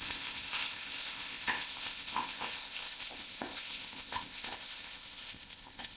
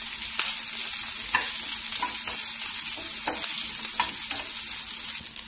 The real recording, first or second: second